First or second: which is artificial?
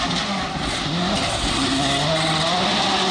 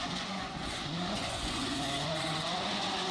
second